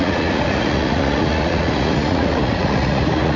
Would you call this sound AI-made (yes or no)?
yes